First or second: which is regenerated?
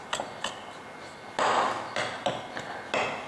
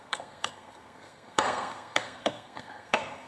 second